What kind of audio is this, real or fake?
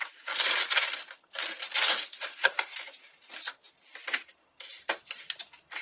real